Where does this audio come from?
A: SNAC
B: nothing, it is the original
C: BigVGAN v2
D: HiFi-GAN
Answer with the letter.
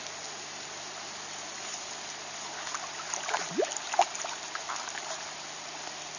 C